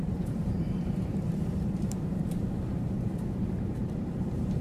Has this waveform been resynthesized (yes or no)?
yes